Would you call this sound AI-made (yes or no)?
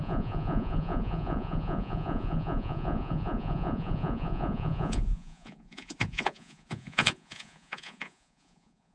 yes